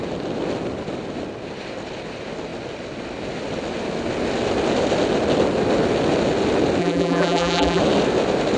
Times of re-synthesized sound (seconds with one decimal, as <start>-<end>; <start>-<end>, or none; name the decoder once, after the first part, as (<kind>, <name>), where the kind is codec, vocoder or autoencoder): 6.8-7.8 (vocoder, BigVGAN v2)

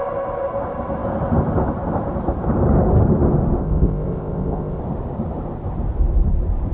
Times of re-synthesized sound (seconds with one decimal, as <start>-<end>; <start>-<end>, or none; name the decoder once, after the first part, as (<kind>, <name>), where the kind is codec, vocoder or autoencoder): 3.6-4.8 (codec, ZipCodec)

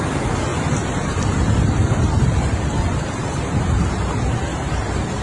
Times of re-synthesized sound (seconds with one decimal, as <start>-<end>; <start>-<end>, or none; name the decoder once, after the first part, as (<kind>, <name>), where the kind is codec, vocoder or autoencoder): 0.5-3.6 (vocoder, BigVGAN v2); 4.5-5.2

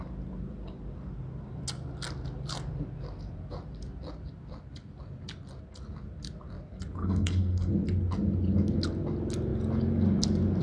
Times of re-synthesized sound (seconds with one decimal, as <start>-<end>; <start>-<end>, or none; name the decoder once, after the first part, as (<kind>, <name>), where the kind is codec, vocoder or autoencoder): 7.0-7.7 (codec, SNAC)

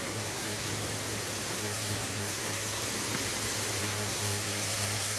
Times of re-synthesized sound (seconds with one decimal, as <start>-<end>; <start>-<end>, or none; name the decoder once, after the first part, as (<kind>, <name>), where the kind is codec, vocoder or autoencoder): 0.0-0.7 (codec, SNAC); 1.5-2.8; 3.8-5.2